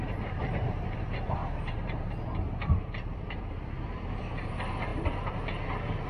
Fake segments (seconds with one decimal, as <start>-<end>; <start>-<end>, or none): 0.0-6.1